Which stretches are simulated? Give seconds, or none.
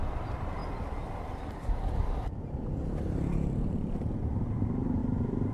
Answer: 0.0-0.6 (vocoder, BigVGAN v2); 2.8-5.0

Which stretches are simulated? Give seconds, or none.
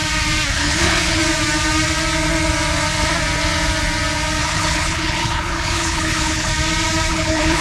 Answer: 0.5-1.2 (codec, HILCodec); 4.4-6.5; 7.1-7.6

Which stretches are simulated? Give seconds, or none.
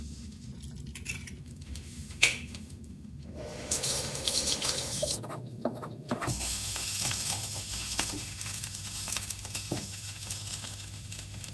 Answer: 0.0-0.5 (autoencoder, DAC-VAE); 1.4-11.5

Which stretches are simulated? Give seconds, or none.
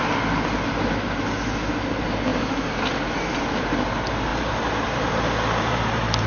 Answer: 4.3-6.3 (vocoder, BigVGAN v2)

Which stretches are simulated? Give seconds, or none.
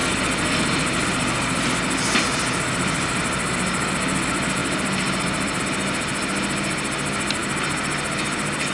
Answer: 4.6-5.6 (vocoder, BigVGAN v2)